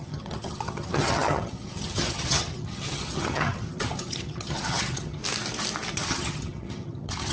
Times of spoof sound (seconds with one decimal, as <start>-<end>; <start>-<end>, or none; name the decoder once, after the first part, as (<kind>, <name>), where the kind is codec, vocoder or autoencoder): 0.0-5.2 (vocoder, HiFi-GAN); 5.9-7.3